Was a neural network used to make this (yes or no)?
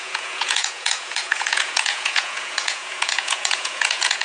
yes